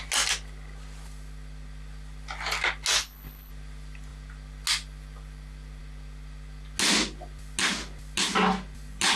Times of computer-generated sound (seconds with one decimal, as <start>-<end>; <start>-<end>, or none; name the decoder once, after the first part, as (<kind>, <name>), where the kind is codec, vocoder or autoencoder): 3.0-3.5 (codec, HILCodec)

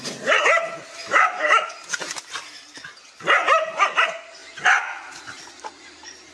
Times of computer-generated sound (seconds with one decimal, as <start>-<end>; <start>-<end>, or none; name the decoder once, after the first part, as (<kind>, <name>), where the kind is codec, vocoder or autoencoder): 1.0-1.7 (autoencoder, DAC-VAE)

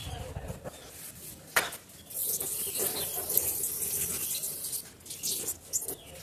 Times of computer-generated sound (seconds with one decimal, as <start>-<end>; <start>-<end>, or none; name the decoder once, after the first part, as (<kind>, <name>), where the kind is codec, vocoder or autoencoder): 0.0-1.2 (vocoder, BigVGAN v2)

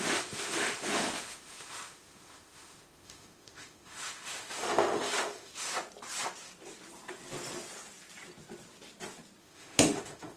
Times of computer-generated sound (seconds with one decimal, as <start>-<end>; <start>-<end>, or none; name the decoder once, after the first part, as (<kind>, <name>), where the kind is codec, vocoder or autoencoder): 0.0-5.7 (autoencoder, DAC-VAE); 9.4-10.4